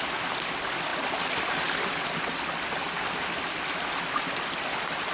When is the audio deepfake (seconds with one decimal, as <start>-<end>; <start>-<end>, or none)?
none